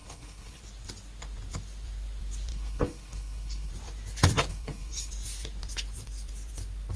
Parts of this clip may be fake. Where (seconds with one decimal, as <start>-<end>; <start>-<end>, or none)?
0.0-0.6; 2.5-3.7; 4.5-5.1